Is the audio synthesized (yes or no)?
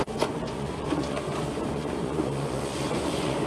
yes